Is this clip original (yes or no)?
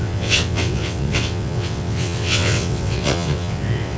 no